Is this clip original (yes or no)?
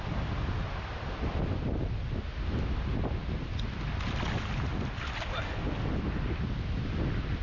yes